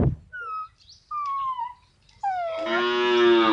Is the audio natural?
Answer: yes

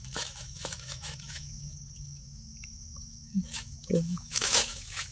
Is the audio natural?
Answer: no